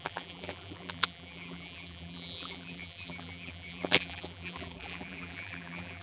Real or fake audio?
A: fake